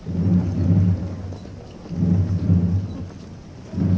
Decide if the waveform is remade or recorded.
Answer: recorded